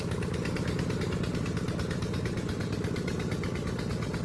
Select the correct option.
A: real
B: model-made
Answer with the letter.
B